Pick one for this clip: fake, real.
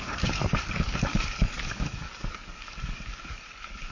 fake